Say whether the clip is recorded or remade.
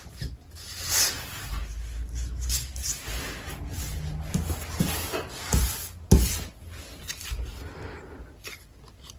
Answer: recorded